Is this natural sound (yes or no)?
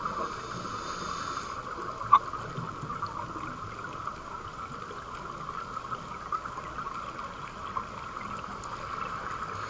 yes